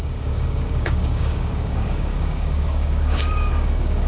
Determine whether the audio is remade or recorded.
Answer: remade